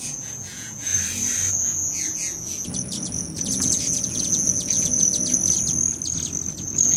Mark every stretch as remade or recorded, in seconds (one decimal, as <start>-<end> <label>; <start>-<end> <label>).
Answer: 0.0-0.9 remade; 0.9-1.5 recorded; 1.5-5.1 remade; 5.1-6.5 recorded; 6.5-7.0 remade